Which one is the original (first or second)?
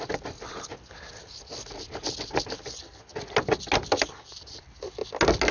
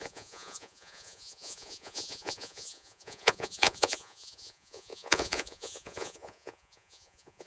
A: first